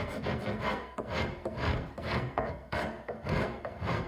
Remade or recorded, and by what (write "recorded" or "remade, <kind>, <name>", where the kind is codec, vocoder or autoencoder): remade, codec, SNAC